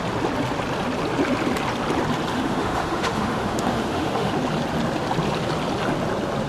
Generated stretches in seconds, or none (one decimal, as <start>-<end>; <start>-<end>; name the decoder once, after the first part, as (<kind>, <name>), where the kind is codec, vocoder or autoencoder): 2.3-4.3 (autoencoder, DAC-VAE)